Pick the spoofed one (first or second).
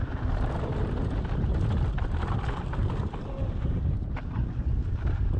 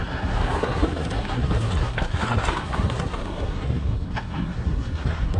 second